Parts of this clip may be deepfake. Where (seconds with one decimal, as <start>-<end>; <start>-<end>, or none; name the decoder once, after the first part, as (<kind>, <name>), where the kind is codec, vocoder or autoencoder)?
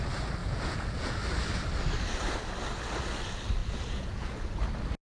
0.4-1.2 (vocoder, Vocos); 3.6-4.6